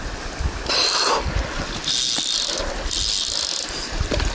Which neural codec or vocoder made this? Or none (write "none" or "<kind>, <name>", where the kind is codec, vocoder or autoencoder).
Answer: none